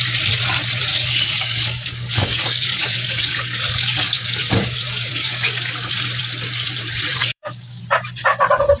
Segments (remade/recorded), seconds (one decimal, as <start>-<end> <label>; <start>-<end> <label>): 0.0-0.9 recorded; 0.9-5.9 remade; 5.9-7.1 recorded; 7.1-7.8 remade; 7.8-8.8 recorded